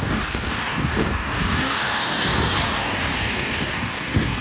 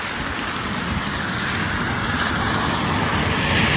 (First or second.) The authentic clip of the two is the second